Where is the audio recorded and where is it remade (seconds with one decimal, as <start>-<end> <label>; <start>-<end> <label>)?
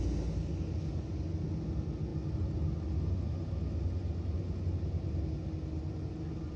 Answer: 0.0-6.6 recorded